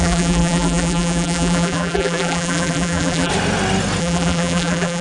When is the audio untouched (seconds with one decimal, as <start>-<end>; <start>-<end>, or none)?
3.3-4.0